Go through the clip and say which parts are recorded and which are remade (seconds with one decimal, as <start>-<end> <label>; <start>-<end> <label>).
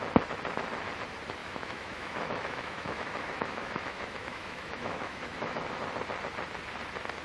0.0-1.4 recorded; 1.4-5.7 remade; 5.7-7.2 recorded